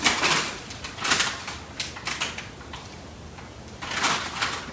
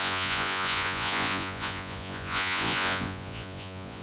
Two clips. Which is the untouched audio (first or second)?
first